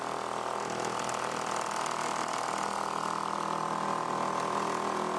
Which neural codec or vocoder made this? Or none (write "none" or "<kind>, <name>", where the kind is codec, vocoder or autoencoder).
none